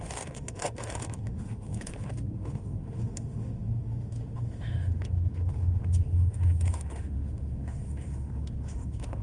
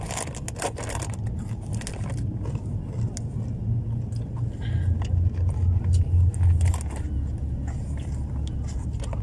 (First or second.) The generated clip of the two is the first